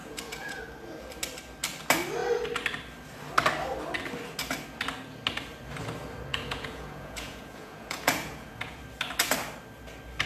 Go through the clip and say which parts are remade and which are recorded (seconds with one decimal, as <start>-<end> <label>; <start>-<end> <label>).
0.0-0.6 remade; 0.6-6.3 recorded; 6.3-8.8 remade; 8.8-10.3 recorded